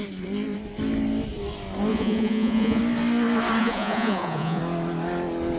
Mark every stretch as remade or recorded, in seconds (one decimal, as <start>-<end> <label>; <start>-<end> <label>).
0.0-1.9 recorded; 1.9-2.8 remade; 2.8-3.6 recorded; 3.6-4.6 remade; 4.6-5.6 recorded